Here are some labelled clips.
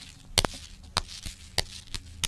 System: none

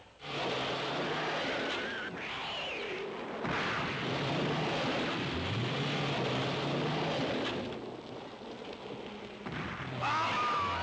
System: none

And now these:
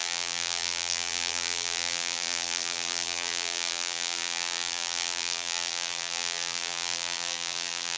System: vocoder, BigVGAN v2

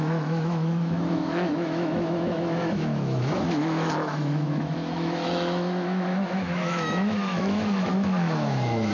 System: autoencoder, DAC-VAE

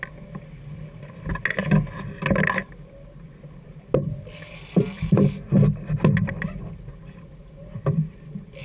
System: none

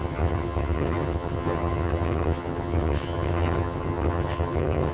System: vocoder, HiFi-GAN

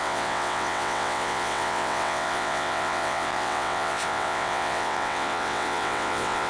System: vocoder, WaveNeXt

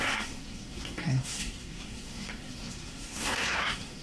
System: codec, SNAC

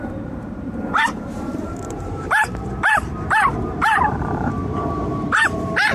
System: vocoder, BigVGAN v2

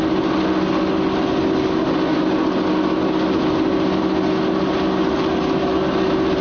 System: none